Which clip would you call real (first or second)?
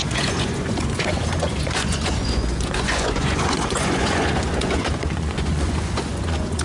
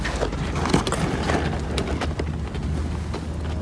second